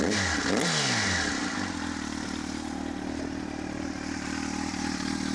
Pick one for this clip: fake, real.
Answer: real